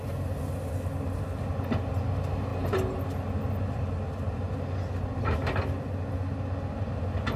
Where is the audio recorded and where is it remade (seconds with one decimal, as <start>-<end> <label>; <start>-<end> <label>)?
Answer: 0.0-7.4 recorded